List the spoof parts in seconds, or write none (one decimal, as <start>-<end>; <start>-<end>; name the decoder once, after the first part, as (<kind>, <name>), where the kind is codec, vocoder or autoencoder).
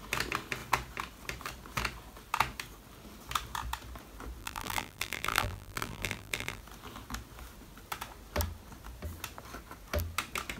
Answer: 4.4-6.6 (vocoder, BigVGAN v2)